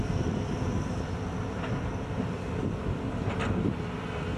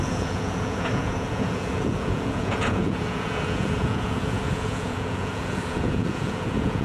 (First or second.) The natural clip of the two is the first